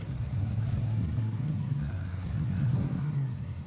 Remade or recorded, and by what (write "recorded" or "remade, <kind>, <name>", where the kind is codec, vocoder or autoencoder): remade, codec, SNAC